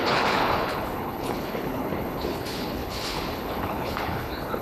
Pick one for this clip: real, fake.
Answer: fake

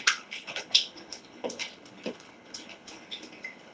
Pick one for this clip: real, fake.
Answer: fake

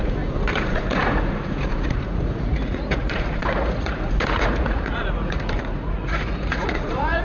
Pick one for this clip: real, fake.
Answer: fake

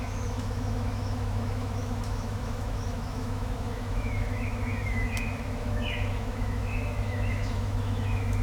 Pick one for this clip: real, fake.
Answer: fake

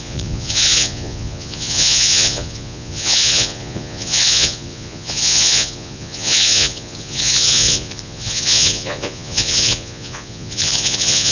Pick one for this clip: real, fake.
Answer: fake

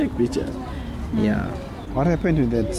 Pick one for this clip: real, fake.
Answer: real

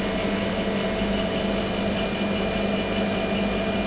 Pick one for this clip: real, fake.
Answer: real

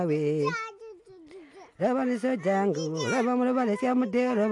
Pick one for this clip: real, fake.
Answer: real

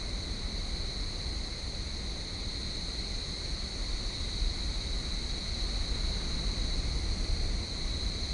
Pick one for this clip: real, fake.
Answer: real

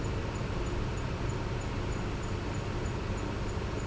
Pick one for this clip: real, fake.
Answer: real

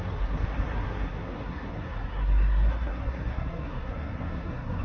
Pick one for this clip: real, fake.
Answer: fake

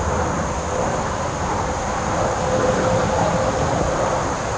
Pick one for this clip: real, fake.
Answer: real